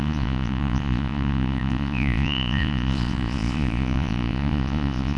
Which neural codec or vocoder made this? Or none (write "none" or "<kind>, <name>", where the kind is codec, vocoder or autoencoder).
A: vocoder, Vocos